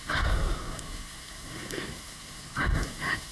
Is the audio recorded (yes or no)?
no